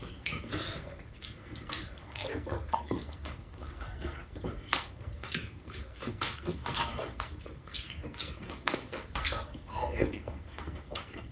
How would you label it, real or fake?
fake